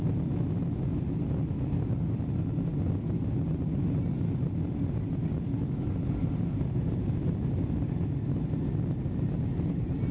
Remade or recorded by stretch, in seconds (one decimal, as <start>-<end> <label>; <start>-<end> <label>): 0.0-10.1 recorded